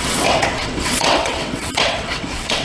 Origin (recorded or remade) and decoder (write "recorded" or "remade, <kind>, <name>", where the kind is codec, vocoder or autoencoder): remade, vocoder, WaveNeXt